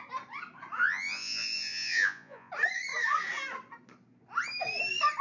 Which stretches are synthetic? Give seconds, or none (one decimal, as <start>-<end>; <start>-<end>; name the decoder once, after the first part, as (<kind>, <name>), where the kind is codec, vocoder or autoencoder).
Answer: 0.8-2.5 (vocoder, Vocos)